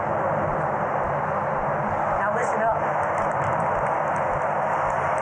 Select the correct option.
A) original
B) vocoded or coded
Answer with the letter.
A